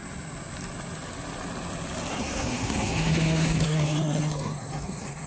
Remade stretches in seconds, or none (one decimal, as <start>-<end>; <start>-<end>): 2.1-5.3